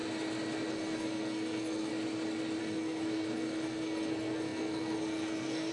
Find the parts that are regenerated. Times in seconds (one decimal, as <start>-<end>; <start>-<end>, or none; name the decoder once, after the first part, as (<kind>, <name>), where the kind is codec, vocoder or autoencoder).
0.7-1.9 (codec, SNAC); 2.6-5.7